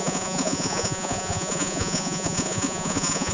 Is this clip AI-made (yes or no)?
yes